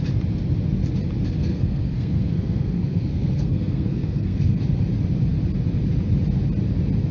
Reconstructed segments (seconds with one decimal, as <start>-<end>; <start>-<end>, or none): 1.4-4.6